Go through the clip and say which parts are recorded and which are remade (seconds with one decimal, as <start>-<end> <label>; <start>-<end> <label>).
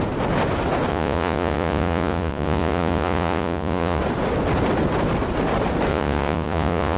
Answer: 0.0-0.9 recorded; 0.9-4.0 remade; 4.0-5.9 recorded; 5.9-7.0 remade